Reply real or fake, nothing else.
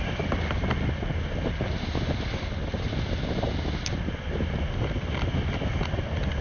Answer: real